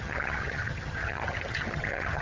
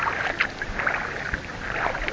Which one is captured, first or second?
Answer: second